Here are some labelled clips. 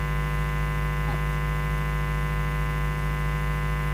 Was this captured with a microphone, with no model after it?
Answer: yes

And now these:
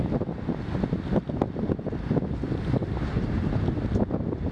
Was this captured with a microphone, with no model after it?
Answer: yes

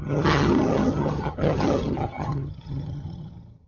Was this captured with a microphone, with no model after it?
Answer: no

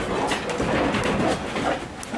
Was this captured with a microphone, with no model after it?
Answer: yes